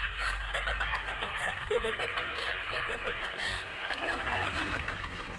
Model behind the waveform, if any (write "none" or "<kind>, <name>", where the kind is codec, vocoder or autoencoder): codec, SNAC